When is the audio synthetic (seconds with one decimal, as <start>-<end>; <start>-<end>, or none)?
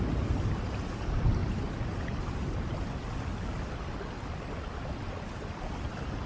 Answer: none